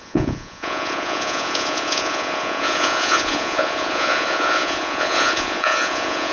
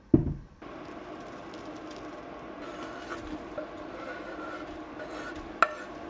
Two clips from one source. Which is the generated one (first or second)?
first